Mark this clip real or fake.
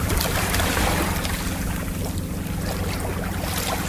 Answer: real